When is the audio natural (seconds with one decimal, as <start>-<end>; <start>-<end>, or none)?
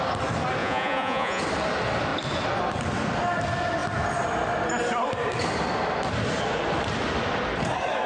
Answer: 0.0-0.6; 1.4-8.1